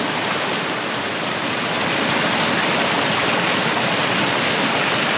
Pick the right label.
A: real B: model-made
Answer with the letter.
A